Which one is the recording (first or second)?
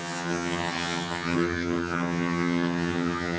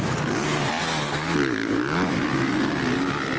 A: second